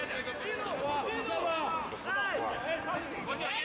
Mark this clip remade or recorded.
recorded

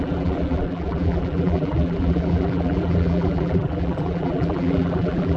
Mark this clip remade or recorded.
remade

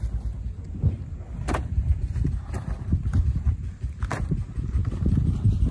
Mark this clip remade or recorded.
recorded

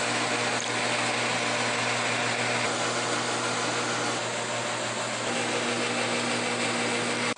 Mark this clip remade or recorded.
recorded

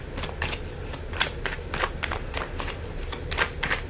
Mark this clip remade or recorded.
recorded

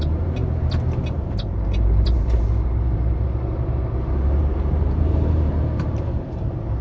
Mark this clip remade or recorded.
remade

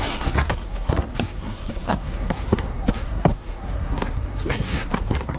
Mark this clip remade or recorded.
remade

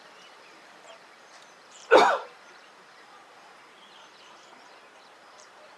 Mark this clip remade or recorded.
remade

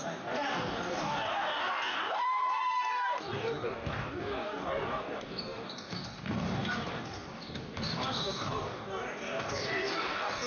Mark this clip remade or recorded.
remade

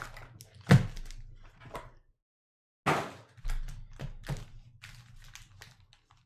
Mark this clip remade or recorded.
recorded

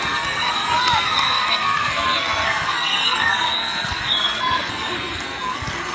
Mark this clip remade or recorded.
remade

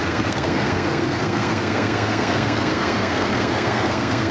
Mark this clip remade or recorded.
remade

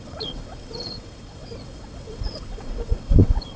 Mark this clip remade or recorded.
remade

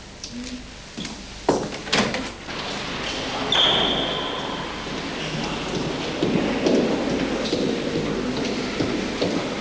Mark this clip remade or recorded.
recorded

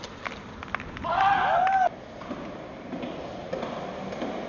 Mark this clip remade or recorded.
recorded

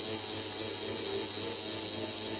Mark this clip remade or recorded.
recorded